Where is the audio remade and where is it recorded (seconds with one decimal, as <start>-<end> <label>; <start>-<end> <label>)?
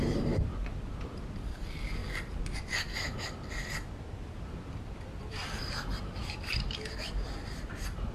0.0-2.0 remade; 2.0-4.2 recorded; 4.2-5.4 remade; 5.4-6.2 recorded; 6.2-8.1 remade